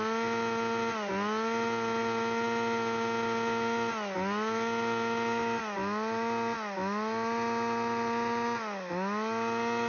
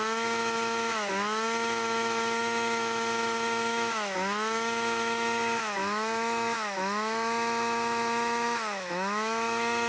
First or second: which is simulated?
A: second